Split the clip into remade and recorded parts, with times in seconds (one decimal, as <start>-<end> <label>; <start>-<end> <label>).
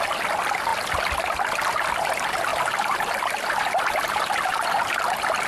0.0-2.5 recorded; 2.5-3.8 remade; 3.8-4.5 recorded; 4.5-5.0 remade; 5.0-5.5 recorded